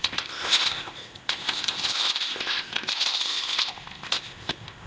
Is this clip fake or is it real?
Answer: fake